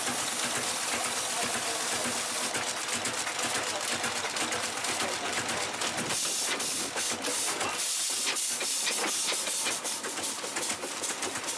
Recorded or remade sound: remade